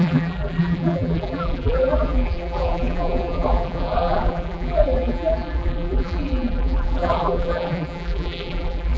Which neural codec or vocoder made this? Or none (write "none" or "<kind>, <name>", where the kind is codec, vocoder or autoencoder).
vocoder, BigVGAN v2